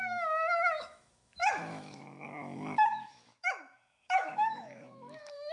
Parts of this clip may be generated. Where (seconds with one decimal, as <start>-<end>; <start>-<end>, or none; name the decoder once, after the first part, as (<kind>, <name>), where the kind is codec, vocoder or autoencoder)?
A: 0.0-5.5 (autoencoder, DAC-VAE)